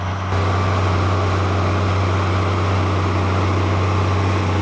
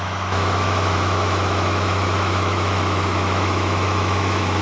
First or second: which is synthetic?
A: second